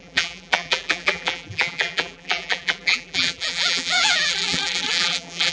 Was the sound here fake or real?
fake